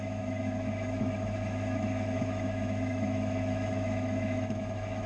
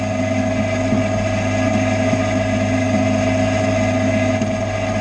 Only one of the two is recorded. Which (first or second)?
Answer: second